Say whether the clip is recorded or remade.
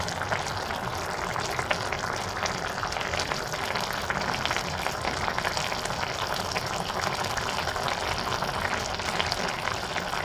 recorded